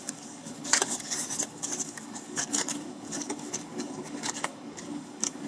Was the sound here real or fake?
fake